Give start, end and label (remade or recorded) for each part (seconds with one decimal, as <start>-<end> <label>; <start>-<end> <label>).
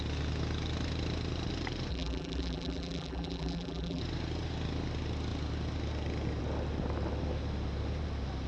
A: 0.0-1.9 recorded; 1.9-4.0 remade; 4.0-8.5 recorded